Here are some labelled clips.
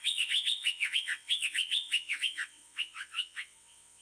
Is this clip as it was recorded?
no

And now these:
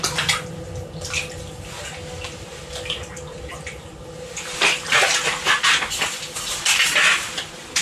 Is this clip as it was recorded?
yes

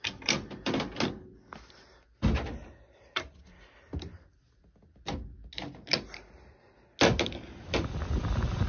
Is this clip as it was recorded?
yes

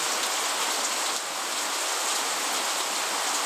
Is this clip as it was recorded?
yes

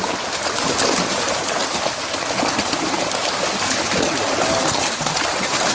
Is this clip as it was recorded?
yes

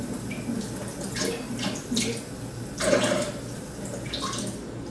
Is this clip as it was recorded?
yes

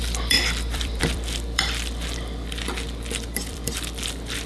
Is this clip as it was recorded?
no